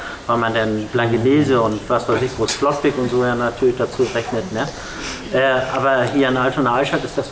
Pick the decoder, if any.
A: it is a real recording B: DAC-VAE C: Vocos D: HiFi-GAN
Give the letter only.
A